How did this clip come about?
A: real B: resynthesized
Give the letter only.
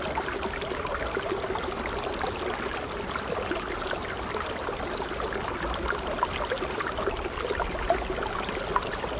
A